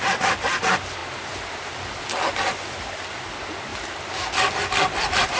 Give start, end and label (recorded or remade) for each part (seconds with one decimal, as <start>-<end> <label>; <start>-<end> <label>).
0.0-5.4 recorded